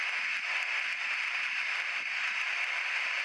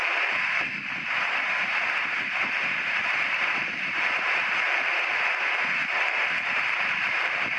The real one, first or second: first